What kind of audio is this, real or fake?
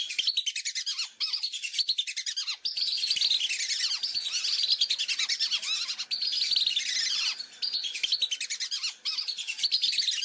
real